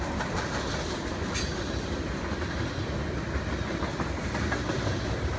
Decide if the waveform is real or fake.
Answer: real